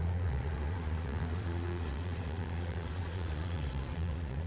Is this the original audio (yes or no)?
no